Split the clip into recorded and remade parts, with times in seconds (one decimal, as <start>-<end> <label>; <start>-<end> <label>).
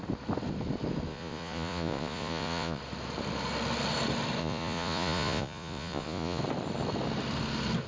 0.0-1.1 recorded; 1.1-2.8 remade; 2.8-4.4 recorded; 4.4-6.4 remade; 6.4-7.9 recorded